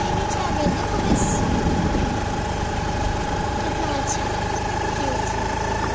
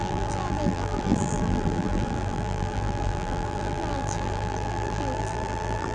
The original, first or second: first